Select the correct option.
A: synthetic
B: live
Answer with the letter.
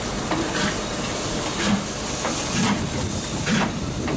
B